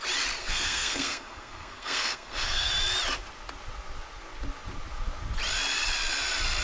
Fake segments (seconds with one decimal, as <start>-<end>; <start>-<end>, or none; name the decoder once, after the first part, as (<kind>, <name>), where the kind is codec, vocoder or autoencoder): 0.4-2.7 (codec, SNAC)